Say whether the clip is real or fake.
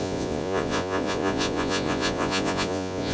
fake